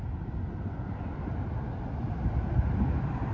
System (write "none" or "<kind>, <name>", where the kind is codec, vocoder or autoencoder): none